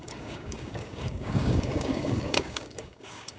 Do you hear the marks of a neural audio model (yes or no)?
yes